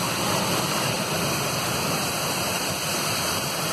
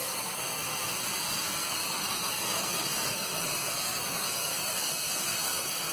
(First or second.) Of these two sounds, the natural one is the first